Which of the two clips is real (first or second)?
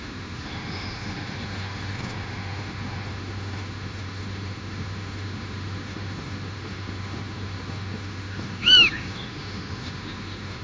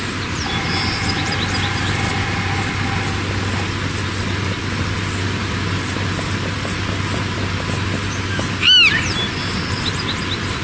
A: second